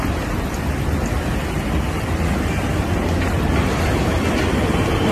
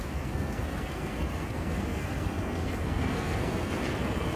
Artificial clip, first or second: second